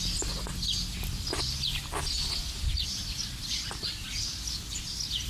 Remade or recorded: recorded